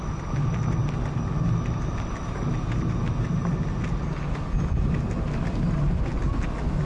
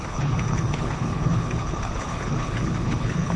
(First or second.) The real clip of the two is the first